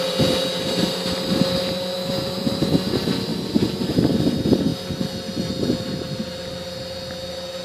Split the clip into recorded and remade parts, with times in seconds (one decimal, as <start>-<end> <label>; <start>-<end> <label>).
0.0-7.6 recorded